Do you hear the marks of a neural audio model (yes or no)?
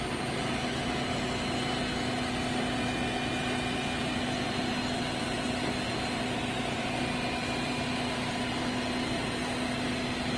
no